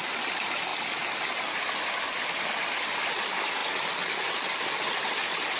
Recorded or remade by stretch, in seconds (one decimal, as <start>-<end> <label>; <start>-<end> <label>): 0.0-5.6 recorded